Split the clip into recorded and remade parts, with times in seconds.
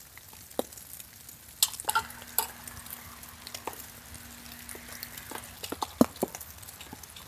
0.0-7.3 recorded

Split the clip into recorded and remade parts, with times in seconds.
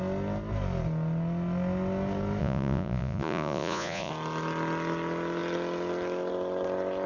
0.0-2.4 recorded; 2.4-4.1 remade; 4.1-7.1 recorded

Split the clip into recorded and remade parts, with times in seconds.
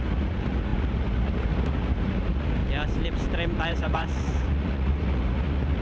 0.0-2.6 remade; 2.6-3.7 recorded; 3.7-5.8 remade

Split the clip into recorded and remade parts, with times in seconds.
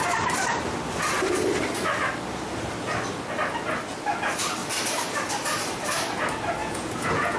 0.0-6.6 recorded; 6.6-7.4 remade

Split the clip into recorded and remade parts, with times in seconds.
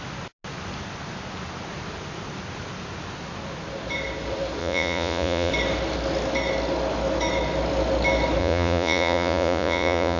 0.0-4.6 recorded; 4.6-5.5 remade; 5.5-8.4 recorded; 8.4-10.2 remade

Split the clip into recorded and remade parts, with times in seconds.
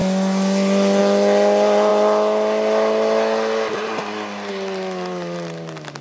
0.0-6.0 recorded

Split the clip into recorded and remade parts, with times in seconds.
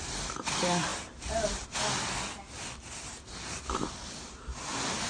0.0-5.1 recorded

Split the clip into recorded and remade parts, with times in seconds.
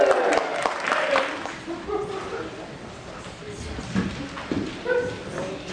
0.0-5.7 recorded